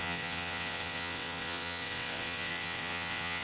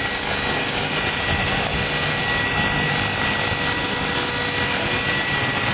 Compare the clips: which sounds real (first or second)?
second